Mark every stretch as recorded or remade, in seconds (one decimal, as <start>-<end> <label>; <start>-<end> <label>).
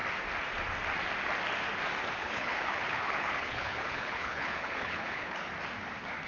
0.0-2.2 recorded; 2.2-5.5 remade; 5.5-6.3 recorded